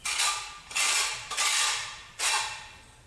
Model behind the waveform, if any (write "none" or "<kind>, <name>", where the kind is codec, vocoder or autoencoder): none